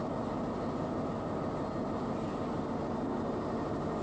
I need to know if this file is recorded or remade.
recorded